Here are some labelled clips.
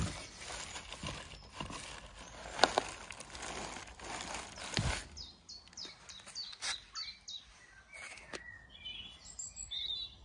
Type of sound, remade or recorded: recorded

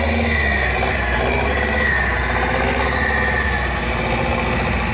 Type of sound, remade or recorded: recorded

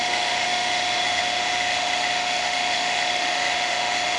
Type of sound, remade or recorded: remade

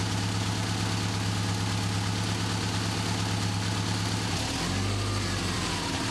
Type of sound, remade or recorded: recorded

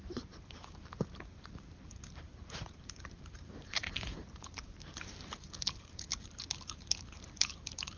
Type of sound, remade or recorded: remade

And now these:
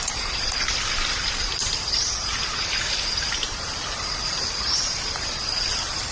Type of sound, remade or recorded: remade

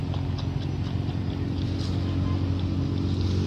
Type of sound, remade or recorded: recorded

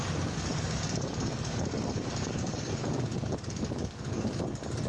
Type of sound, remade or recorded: remade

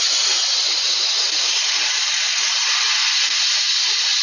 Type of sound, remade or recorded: recorded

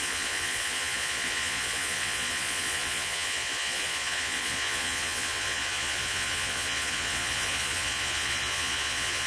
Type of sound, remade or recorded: remade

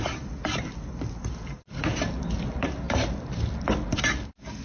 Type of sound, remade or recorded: recorded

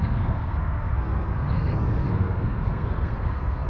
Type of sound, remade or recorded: remade